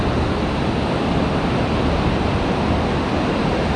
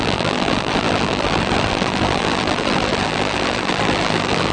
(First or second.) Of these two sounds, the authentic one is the first